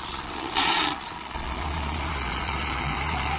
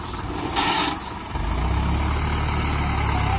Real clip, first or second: second